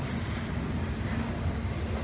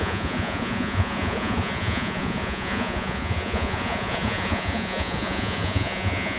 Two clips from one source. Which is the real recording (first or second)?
first